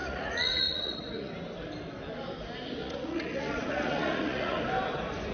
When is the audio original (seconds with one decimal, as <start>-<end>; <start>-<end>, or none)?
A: 1.3-2.8; 4.6-5.3